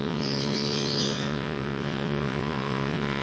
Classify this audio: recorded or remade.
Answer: remade